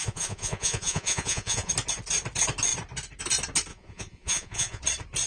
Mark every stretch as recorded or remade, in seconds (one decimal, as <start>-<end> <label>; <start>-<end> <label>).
0.0-1.7 remade; 1.7-3.7 recorded; 3.7-4.8 remade; 4.8-5.3 recorded